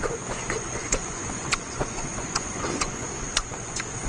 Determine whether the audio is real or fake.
fake